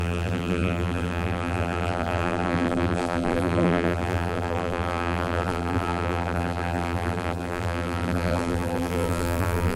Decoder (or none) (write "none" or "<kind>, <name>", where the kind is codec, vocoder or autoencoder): vocoder, BigVGAN v2